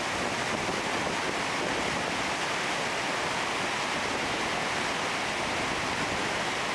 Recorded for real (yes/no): yes